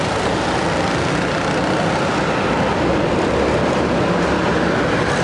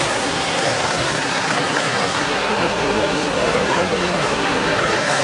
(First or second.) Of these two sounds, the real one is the first